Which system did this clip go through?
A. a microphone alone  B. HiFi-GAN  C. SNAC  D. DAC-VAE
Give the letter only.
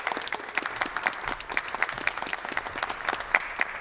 A